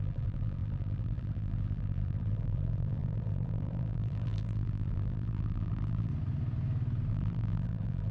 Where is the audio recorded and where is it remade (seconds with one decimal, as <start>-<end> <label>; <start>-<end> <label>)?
0.0-6.1 remade; 6.1-7.1 recorded; 7.1-8.1 remade